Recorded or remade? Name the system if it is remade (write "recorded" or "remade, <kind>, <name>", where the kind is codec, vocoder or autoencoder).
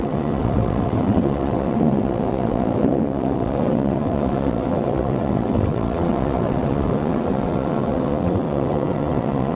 remade, vocoder, WaveNeXt